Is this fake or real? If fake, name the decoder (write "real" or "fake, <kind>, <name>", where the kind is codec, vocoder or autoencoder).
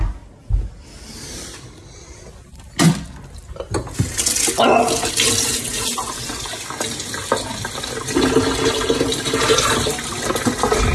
real